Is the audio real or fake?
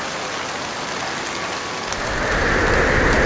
real